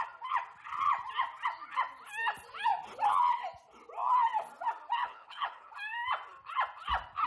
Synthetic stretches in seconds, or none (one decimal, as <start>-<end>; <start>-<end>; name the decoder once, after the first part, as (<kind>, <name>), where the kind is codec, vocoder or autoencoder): 5.0-5.7 (codec, HILCodec)